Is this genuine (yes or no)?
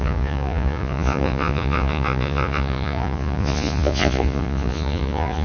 no